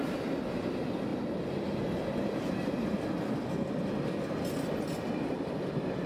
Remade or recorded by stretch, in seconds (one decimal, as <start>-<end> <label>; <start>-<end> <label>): 0.0-6.1 recorded